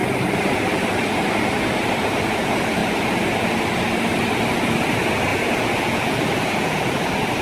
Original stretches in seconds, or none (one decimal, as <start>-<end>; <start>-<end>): 0.0-5.3; 6.9-7.4